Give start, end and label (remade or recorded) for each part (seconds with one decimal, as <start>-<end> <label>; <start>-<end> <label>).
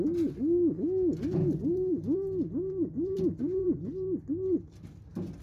0.0-1.7 recorded; 1.7-4.9 remade; 4.9-5.4 recorded